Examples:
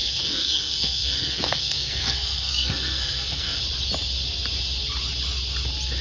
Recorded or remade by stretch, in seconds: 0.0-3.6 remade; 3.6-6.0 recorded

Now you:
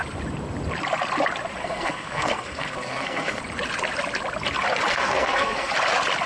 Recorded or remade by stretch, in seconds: 0.0-1.6 recorded; 1.6-3.4 remade; 3.4-4.9 recorded; 4.9-5.7 remade; 5.7-6.3 recorded

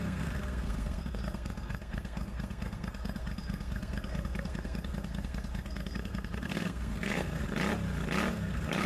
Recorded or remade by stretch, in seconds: 0.0-7.4 remade; 7.4-8.3 recorded; 8.3-8.9 remade

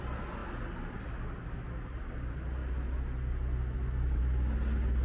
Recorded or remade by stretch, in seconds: 0.0-5.0 recorded

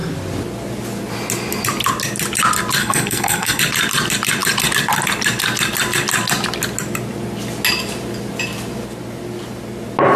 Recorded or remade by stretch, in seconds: 0.0-2.8 recorded; 2.8-3.6 remade; 3.6-10.2 recorded

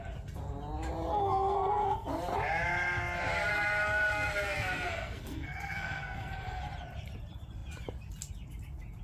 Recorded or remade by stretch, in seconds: 0.0-1.1 recorded; 1.1-2.1 remade; 2.1-3.5 recorded; 3.5-6.6 remade; 6.6-9.0 recorded

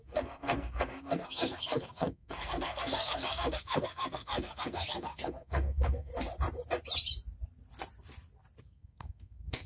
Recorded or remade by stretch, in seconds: 0.0-6.1 remade; 6.1-8.6 recorded; 8.6-9.7 remade